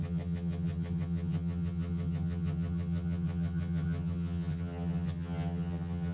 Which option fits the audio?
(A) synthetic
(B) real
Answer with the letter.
A